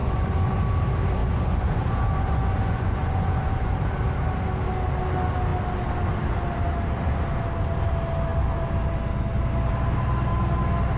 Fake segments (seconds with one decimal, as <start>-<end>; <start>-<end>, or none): 0.0-0.6; 1.2-3.7